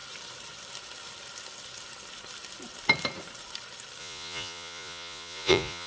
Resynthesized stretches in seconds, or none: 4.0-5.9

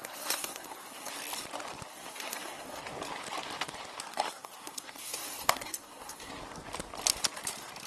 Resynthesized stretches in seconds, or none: 0.0-1.1; 1.9-2.8; 4.1-6.3